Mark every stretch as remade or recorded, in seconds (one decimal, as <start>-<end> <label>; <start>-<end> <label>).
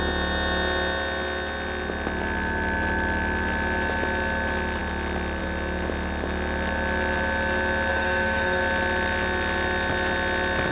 0.0-7.9 recorded; 7.9-8.6 remade; 8.6-10.7 recorded